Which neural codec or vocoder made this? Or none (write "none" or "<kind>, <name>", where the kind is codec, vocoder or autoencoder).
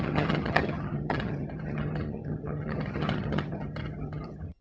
vocoder, HiFi-GAN